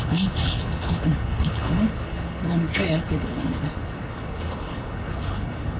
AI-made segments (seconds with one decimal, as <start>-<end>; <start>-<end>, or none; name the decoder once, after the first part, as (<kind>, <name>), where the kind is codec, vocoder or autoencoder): 0.0-5.8 (codec, HILCodec)